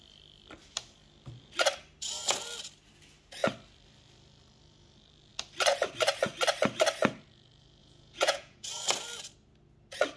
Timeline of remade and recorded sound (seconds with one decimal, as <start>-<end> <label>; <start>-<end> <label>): 0.0-7.8 recorded; 7.8-8.7 remade; 8.7-10.2 recorded